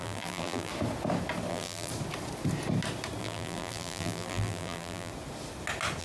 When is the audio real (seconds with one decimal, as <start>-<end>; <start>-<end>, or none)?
0.7-1.5; 1.9-3.2; 5.1-6.0